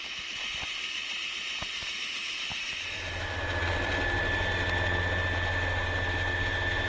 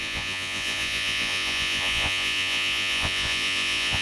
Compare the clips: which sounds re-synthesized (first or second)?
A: second